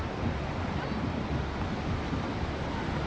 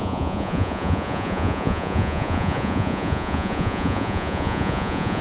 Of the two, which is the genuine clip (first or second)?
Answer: first